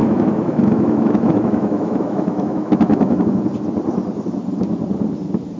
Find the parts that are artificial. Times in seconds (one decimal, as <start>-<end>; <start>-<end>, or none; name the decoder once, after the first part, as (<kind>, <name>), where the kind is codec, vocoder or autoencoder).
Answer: 0.0-3.4 (autoencoder, DAC-VAE)